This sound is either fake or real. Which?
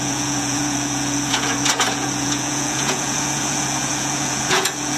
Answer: fake